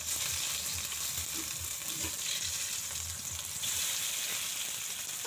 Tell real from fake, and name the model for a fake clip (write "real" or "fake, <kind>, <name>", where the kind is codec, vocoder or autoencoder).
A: fake, vocoder, BigVGAN v2